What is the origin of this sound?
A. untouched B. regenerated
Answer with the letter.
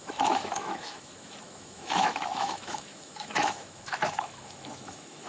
B